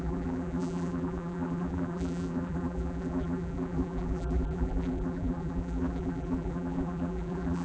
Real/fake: fake